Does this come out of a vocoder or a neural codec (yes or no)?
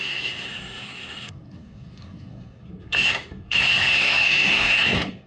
yes